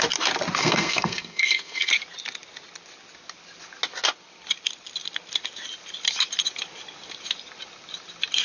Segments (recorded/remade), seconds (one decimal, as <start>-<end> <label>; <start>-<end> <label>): 0.0-0.6 recorded; 0.6-1.9 remade; 1.9-8.4 recorded